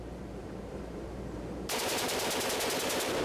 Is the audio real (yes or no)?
no